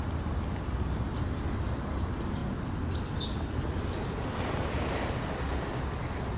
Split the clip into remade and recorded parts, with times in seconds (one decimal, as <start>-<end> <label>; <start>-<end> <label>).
0.0-6.4 recorded